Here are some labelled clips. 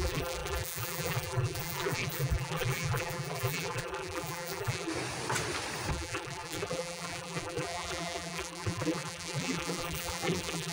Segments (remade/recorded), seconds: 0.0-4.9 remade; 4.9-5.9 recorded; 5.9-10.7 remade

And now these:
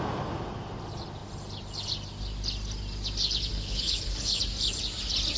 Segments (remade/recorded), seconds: 0.0-3.5 recorded; 3.5-4.4 remade; 4.4-5.4 recorded